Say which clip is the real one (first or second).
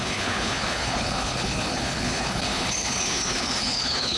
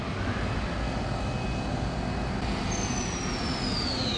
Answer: second